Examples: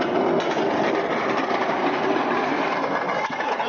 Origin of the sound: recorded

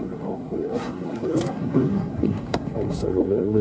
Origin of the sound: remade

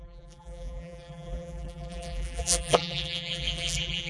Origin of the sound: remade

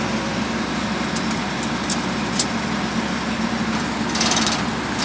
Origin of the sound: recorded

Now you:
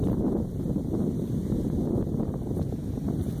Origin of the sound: recorded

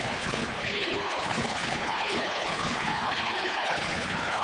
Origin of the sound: remade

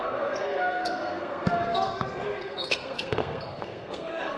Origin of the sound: remade